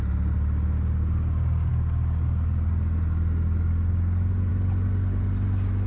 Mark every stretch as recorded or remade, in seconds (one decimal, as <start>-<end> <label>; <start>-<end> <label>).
0.0-5.9 recorded